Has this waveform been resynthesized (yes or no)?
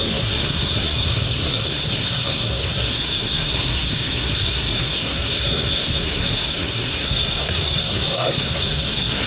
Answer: yes